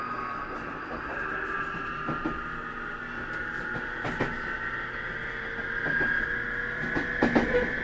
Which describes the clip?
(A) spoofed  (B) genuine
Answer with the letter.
B